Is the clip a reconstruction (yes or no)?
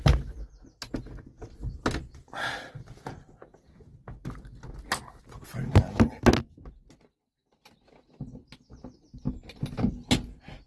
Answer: no